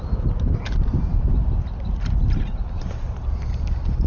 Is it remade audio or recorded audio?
recorded